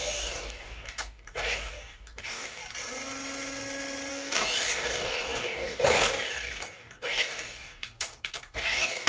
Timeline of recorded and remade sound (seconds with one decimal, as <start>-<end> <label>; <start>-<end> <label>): 0.0-2.6 remade; 2.6-4.1 recorded; 4.1-9.1 remade